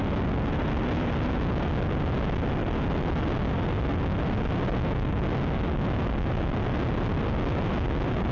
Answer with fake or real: real